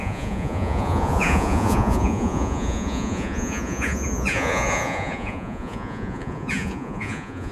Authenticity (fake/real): fake